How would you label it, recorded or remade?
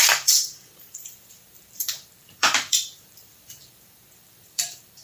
remade